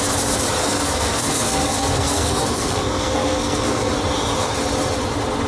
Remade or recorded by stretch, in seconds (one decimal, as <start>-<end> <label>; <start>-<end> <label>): 0.0-0.6 recorded; 0.6-3.9 remade; 3.9-5.5 recorded